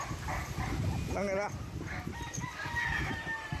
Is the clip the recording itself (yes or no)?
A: yes